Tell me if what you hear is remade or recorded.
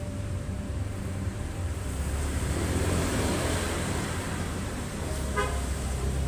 remade